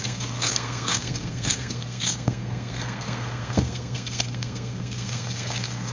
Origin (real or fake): fake